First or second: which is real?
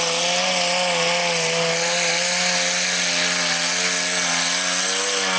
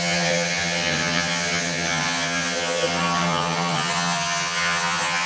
first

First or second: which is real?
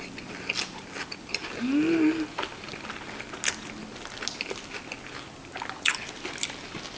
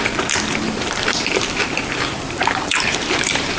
first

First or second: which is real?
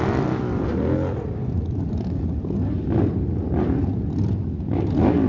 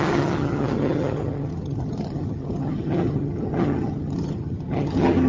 first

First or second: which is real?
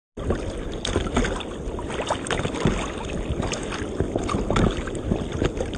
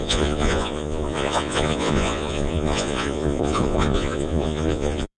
first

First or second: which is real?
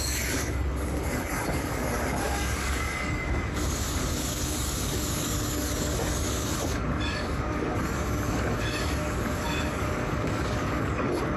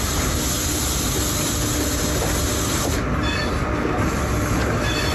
second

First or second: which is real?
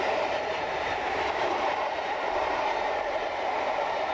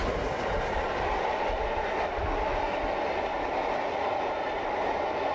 second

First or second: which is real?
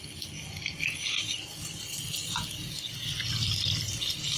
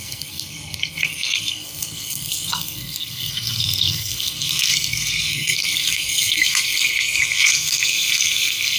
first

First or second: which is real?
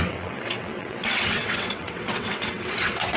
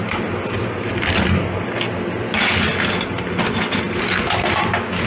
second